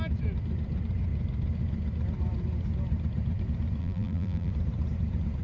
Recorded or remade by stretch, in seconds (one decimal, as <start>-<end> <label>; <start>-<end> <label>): 0.0-3.8 recorded; 3.8-4.5 remade; 4.5-5.4 recorded

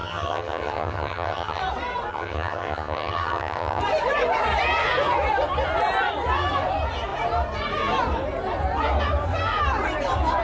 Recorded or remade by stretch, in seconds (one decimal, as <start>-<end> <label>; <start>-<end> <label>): 0.0-1.6 remade; 1.6-2.1 recorded; 2.1-3.8 remade; 3.8-10.4 recorded